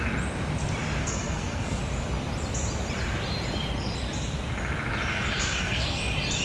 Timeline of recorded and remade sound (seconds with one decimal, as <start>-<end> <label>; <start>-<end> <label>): 0.0-1.0 recorded; 1.0-1.8 remade; 1.8-5.1 recorded; 5.1-6.0 remade; 6.0-6.4 recorded